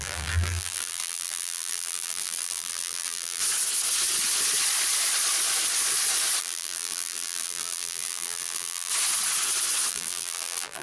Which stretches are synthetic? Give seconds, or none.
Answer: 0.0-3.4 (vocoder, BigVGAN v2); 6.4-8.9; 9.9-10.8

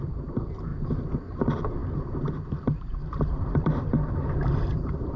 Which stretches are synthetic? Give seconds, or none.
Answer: 0.0-0.7 (vocoder, BigVGAN v2); 1.4-5.2

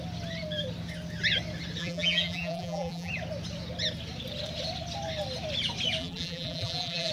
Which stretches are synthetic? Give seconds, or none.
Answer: 1.8-3.1 (vocoder, BigVGAN v2); 6.0-7.1

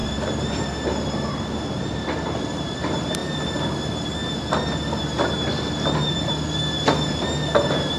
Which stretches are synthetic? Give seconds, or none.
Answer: 0.0-3.2 (vocoder, BigVGAN v2)

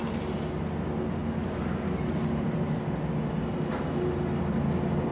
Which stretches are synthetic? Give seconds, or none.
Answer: none

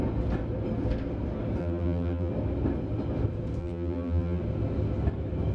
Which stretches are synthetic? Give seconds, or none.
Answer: 1.6-2.3 (vocoder, BigVGAN v2); 3.6-4.4

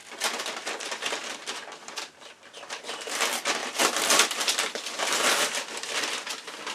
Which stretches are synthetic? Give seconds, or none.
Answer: 0.0-2.2 (vocoder, BigVGAN v2); 3.6-5.0